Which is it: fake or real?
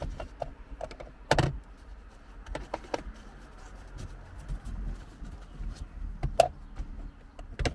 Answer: real